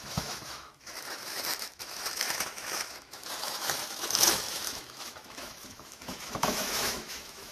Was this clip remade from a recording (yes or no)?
yes